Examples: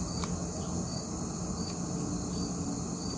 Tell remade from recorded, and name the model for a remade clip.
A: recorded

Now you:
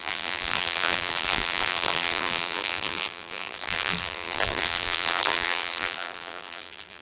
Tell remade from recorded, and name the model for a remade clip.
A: remade, vocoder, BigVGAN v2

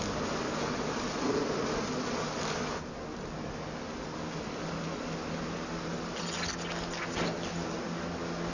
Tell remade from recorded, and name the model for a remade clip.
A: recorded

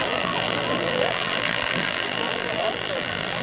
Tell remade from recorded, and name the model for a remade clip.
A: remade, vocoder, BigVGAN v2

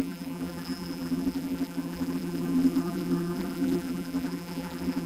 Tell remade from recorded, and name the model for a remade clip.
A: remade, vocoder, BigVGAN v2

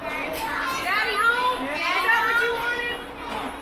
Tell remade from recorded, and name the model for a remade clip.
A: recorded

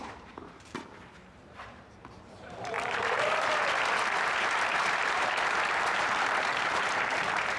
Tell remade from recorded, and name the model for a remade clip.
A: remade, vocoder, BigVGAN v2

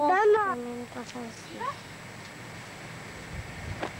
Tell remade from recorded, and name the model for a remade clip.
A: recorded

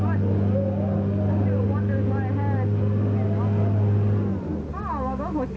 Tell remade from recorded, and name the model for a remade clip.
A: recorded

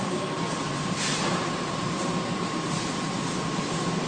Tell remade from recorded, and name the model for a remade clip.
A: remade, vocoder, BigVGAN v2